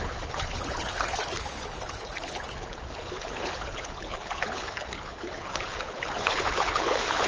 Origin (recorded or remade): remade